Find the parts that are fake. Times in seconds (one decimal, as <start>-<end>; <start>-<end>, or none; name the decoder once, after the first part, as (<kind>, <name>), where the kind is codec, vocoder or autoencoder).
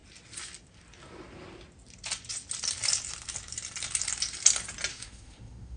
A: 4.9-5.8 (autoencoder, DAC-VAE)